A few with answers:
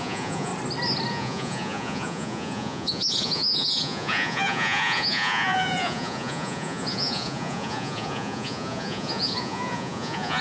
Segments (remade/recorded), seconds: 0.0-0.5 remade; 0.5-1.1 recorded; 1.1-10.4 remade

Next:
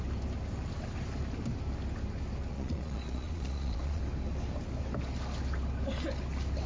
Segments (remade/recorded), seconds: 0.0-2.5 recorded; 2.5-4.0 remade; 4.0-6.7 recorded

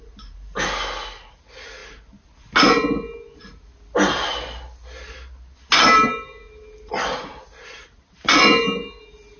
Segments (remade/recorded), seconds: 0.0-9.4 recorded

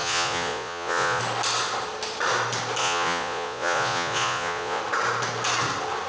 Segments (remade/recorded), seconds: 0.0-1.2 remade; 1.2-2.8 recorded; 2.8-4.8 remade; 4.8-6.1 recorded